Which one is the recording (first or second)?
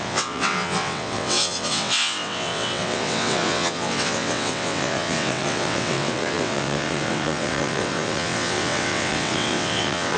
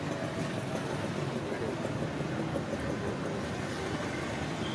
second